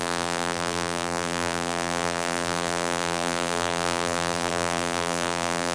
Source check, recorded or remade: remade